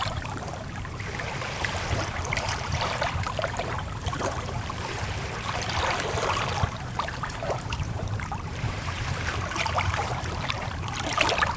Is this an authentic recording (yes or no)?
no